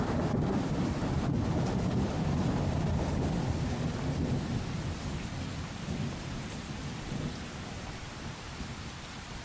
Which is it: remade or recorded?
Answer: remade